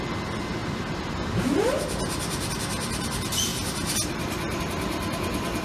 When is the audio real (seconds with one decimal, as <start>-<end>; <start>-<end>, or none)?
0.0-5.6